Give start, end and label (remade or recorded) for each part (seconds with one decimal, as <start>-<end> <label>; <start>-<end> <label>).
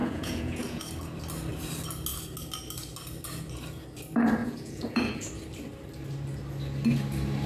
0.0-0.8 remade; 0.8-4.4 recorded; 4.4-5.3 remade; 5.3-7.5 recorded